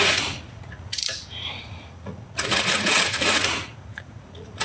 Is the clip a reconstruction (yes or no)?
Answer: yes